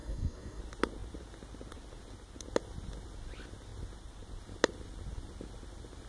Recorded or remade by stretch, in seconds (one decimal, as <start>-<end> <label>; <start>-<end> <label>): 0.0-0.6 remade; 0.6-6.1 recorded